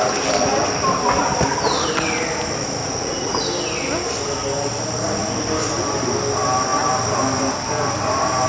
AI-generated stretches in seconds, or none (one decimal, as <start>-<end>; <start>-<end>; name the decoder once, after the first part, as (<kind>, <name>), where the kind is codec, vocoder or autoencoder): 2.8-3.4 (vocoder, Vocos)